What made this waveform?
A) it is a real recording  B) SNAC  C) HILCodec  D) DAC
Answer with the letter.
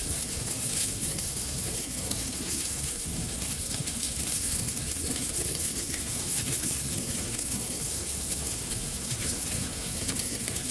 B